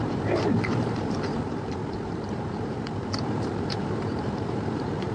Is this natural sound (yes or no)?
no